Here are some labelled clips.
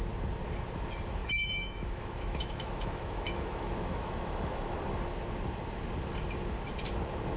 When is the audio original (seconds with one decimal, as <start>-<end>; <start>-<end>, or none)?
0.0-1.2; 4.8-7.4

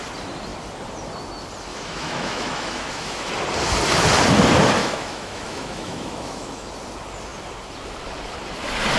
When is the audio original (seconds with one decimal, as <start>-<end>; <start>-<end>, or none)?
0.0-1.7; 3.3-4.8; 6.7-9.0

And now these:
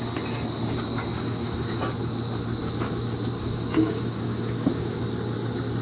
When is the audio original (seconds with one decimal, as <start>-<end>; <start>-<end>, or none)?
0.0-1.2; 1.8-3.4; 5.0-5.8

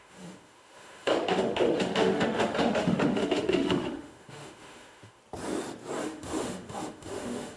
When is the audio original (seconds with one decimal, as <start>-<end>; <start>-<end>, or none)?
5.2-6.0

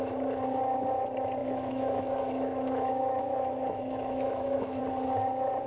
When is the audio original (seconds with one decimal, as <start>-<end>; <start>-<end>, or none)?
0.0-1.4; 4.8-5.7

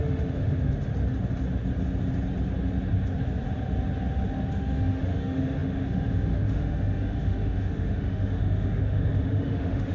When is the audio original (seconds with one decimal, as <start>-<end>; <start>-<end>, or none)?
0.9-4.5